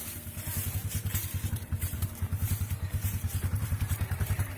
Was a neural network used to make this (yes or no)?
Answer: yes